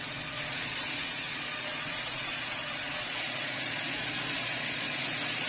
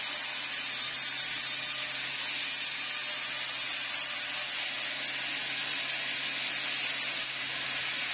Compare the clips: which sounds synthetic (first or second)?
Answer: first